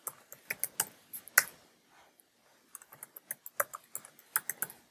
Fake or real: real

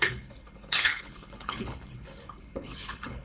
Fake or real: fake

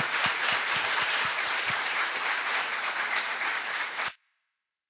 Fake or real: fake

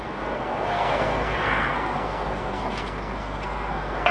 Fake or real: fake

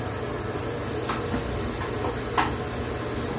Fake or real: real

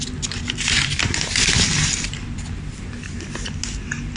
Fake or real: real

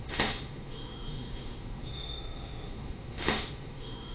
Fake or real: fake